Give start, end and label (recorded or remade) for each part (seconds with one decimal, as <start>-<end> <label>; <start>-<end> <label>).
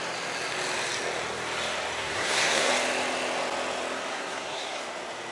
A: 0.0-2.0 recorded; 2.0-2.7 remade; 2.7-4.1 recorded; 4.1-4.8 remade; 4.8-5.3 recorded